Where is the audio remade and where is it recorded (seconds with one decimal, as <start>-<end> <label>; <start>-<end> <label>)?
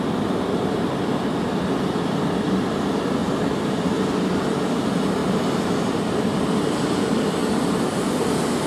0.0-5.2 remade; 5.2-5.8 recorded; 5.8-7.4 remade; 7.4-8.1 recorded; 8.1-8.7 remade